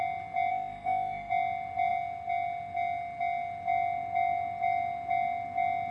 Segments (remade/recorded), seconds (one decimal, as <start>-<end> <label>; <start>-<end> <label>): 0.0-0.5 recorded; 0.5-1.3 remade; 1.3-5.9 recorded